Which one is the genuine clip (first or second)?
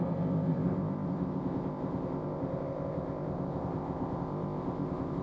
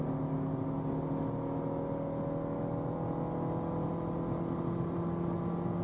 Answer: second